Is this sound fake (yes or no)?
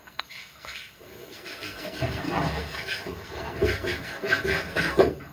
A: yes